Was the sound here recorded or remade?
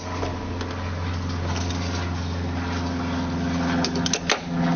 recorded